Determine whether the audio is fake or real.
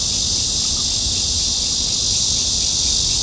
real